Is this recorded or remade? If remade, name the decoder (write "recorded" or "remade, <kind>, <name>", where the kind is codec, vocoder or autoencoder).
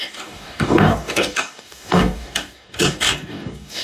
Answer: remade, codec, DAC